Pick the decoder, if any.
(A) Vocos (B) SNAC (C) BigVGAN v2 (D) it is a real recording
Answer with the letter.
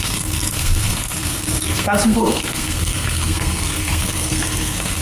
B